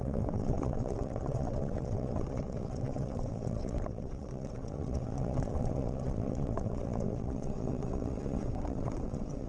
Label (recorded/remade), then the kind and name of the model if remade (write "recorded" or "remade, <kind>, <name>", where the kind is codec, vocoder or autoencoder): remade, vocoder, WaveNeXt